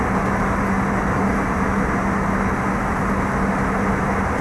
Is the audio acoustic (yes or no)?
yes